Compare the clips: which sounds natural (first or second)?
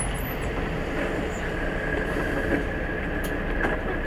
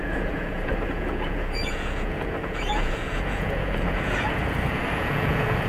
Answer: first